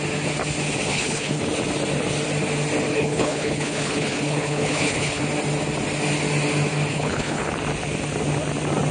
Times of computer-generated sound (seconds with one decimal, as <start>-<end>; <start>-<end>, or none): 0.9-1.4; 2.9-5.2; 6.9-7.5